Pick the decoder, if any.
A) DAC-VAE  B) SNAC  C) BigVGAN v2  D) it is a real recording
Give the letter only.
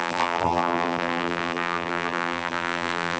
C